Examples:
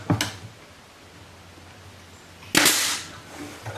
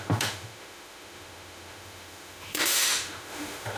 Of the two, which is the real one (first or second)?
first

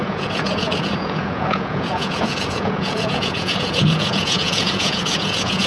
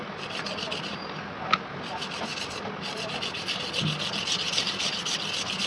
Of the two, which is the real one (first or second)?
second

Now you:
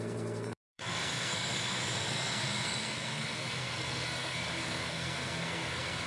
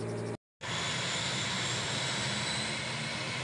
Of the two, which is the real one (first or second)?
second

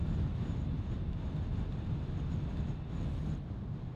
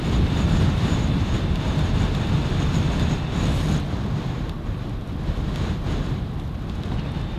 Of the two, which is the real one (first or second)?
first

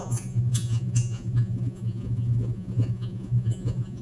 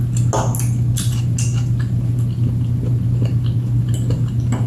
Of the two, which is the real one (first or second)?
second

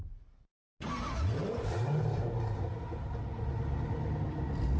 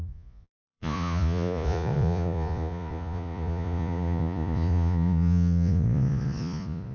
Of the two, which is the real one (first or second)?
first